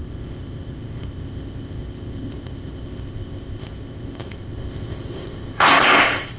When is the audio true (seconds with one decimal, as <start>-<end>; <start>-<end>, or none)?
none